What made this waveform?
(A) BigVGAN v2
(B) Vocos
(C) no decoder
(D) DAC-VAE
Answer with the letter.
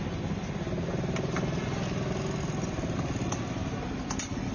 C